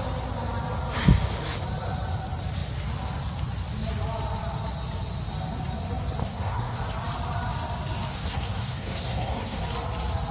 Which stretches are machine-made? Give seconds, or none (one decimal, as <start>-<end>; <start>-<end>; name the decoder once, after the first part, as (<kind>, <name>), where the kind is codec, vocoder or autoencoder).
6.2-6.8 (codec, SNAC); 8.1-9.6